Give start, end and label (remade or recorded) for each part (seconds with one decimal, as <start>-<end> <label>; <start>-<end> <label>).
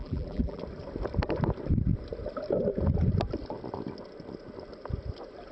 0.0-0.6 remade; 0.6-5.5 recorded